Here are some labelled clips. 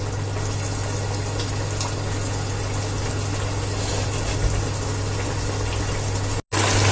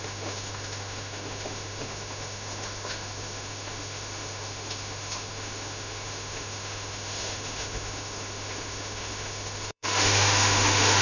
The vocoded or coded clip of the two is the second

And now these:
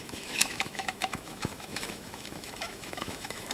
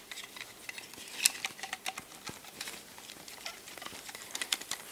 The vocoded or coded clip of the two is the first